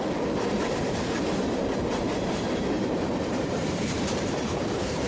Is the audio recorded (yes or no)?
no